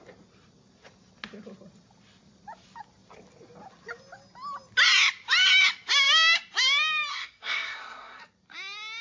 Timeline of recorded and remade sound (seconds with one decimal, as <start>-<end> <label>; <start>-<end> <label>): 0.0-7.1 recorded; 7.1-8.2 remade; 8.2-9.0 recorded